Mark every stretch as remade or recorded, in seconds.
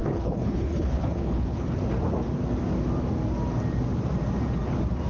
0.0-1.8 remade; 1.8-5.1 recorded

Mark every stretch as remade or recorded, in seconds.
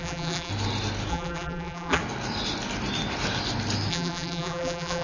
0.0-0.5 remade; 0.5-1.1 recorded; 1.1-2.0 remade; 2.0-3.9 recorded; 3.9-5.0 remade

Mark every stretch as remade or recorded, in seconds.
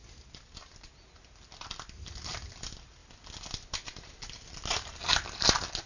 0.0-5.9 recorded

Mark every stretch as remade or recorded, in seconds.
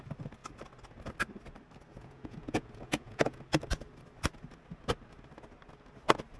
0.0-1.9 recorded; 1.9-3.4 remade; 3.4-6.4 recorded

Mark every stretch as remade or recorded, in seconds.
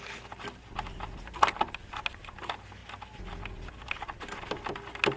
0.0-5.2 recorded